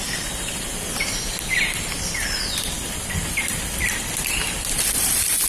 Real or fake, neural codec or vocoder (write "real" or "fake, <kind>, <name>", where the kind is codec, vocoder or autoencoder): fake, vocoder, BigVGAN v2